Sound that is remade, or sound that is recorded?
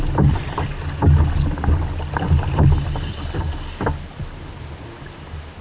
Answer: recorded